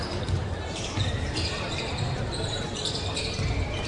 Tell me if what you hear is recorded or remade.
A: remade